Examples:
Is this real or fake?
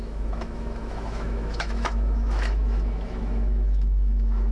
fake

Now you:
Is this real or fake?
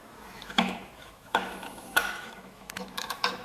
fake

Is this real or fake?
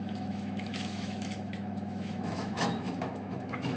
fake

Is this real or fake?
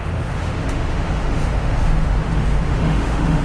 fake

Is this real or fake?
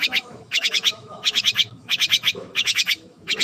fake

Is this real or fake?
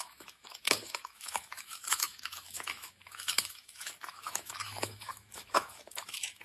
fake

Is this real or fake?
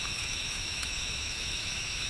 fake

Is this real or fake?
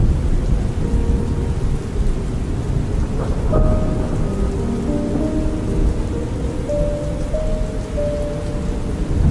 real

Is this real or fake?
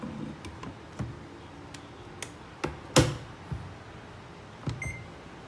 real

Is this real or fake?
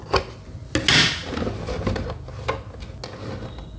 real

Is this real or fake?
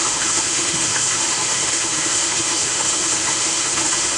fake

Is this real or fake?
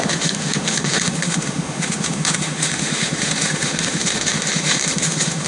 fake